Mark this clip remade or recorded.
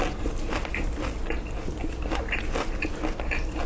recorded